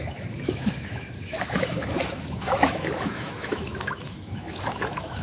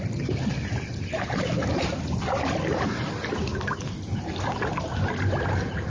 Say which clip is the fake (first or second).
first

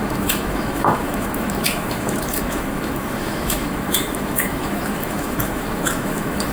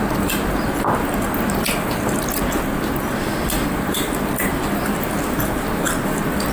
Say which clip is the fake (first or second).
first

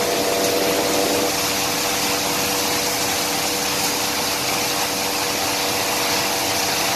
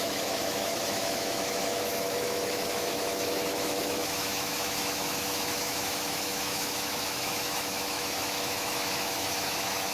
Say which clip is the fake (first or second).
second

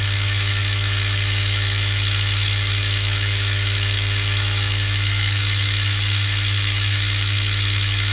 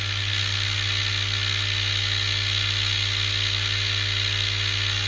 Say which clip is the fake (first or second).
first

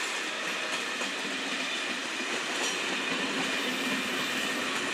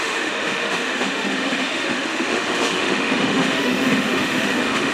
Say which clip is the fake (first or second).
second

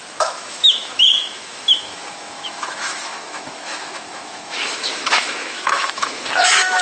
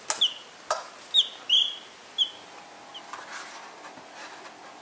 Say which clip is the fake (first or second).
first